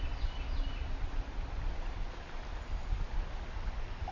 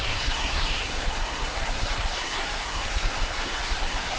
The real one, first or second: first